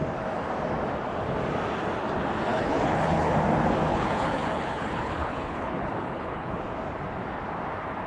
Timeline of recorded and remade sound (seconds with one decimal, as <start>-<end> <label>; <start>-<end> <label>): 0.0-2.5 recorded; 2.5-3.3 remade; 3.3-3.9 recorded; 3.9-6.5 remade; 6.5-8.1 recorded